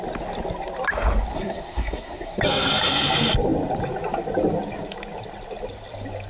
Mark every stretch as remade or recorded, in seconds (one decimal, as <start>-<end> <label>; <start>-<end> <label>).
0.0-1.3 recorded; 1.3-2.4 remade; 2.4-6.3 recorded